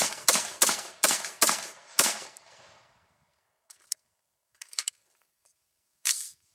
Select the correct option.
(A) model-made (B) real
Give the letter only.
A